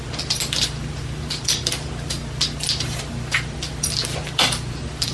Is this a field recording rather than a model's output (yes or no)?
no